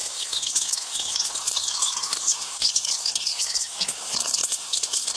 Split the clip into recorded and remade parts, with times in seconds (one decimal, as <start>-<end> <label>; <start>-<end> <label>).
0.0-5.2 remade